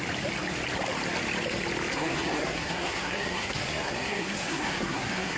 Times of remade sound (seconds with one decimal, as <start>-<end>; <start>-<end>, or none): 1.9-5.4